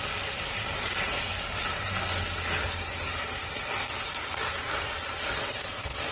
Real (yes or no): yes